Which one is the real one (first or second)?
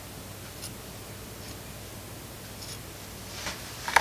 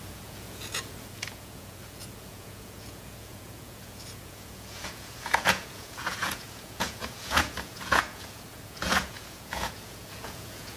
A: first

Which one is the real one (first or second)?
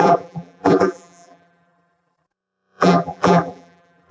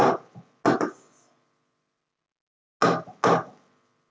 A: second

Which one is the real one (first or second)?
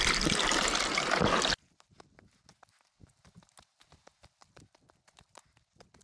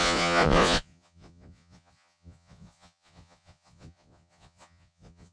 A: first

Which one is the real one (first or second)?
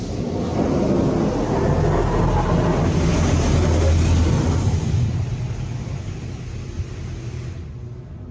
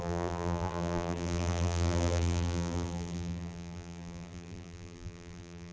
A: first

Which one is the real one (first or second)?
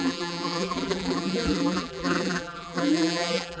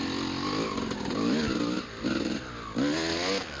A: second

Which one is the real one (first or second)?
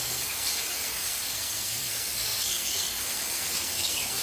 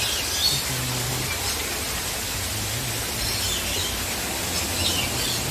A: second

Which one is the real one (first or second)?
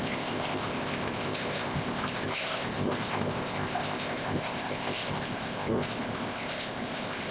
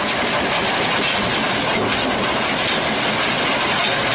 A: second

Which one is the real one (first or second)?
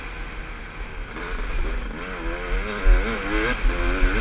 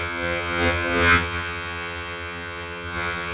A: first